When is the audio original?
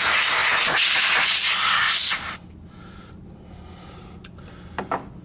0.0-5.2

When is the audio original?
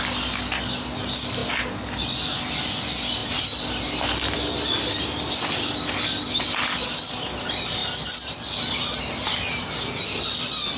0.0-3.2; 3.9-10.8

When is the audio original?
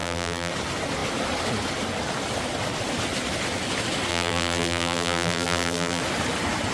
0.5-4.1; 6.0-6.7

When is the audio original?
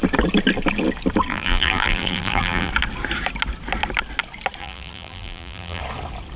0.0-1.3; 2.7-4.6; 5.8-6.4